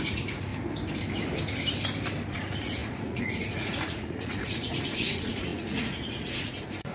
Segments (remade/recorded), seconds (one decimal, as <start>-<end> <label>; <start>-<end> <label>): 0.0-0.5 remade; 0.5-2.3 recorded; 2.3-6.9 remade